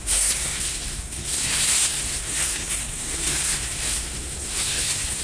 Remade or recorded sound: remade